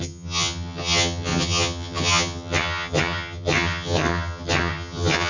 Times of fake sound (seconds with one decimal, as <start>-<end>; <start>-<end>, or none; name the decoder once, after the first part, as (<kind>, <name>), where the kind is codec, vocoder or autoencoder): 0.0-5.3 (vocoder, HiFi-GAN)